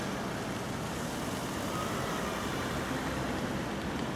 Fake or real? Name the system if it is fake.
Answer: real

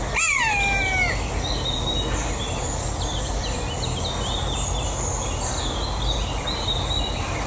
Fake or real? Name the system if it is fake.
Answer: real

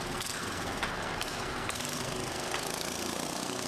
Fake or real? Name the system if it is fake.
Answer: fake, codec, SNAC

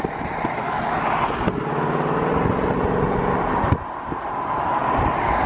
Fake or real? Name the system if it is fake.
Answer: real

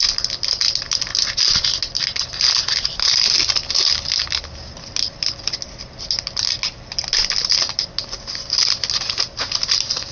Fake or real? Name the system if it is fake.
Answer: real